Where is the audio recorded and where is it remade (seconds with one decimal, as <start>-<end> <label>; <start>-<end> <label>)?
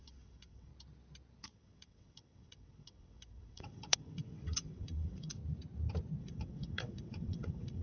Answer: 0.0-0.7 remade; 0.7-1.4 recorded; 1.4-5.4 remade; 5.4-6.2 recorded; 6.2-7.8 remade